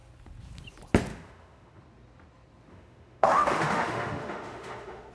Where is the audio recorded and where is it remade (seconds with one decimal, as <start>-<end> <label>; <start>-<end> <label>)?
0.0-1.1 recorded; 1.1-1.8 remade; 1.8-2.7 recorded; 2.7-5.1 remade